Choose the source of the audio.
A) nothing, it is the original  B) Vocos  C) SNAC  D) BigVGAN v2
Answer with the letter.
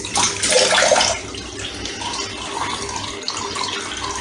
A